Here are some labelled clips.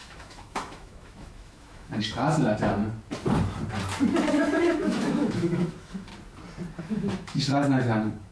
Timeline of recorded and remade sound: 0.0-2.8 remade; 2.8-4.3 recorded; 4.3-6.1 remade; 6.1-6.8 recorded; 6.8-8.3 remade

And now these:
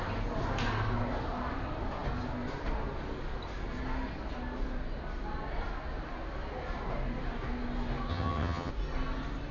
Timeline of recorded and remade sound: 0.0-8.1 recorded; 8.1-8.7 remade; 8.7-9.5 recorded

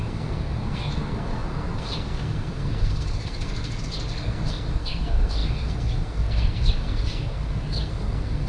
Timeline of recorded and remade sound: 0.0-8.5 remade